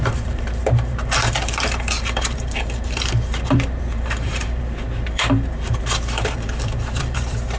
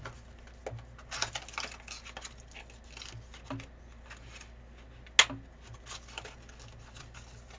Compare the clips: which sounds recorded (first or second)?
second